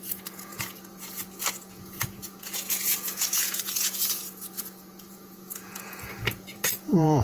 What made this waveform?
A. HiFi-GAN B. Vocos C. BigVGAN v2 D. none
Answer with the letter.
B